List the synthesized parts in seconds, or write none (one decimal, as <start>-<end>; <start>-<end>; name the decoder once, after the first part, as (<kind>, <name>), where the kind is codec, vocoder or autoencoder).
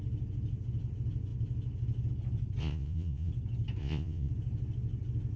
2.6-3.3 (vocoder, Vocos); 3.8-4.3